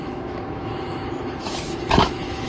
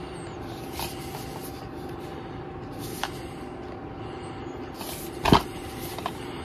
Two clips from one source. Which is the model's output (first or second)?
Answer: first